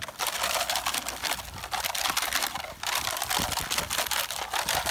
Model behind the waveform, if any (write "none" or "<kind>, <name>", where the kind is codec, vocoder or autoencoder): none